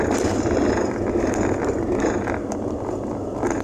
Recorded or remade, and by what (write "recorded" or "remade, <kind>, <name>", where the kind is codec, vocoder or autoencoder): recorded